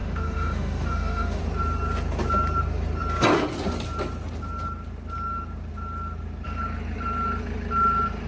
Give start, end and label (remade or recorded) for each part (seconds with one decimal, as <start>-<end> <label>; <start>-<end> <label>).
0.0-1.4 remade; 1.4-8.3 recorded